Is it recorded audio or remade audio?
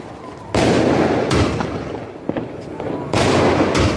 recorded